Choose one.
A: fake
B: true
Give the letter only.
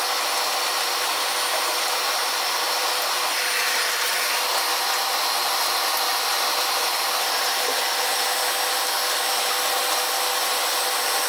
B